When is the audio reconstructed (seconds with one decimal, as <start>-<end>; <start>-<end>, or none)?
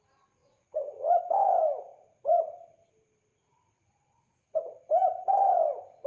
0.4-1.2; 1.9-2.4; 3.3-4.8